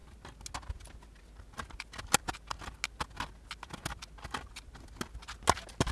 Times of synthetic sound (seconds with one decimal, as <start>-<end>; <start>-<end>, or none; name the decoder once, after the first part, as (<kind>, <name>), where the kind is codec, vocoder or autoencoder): none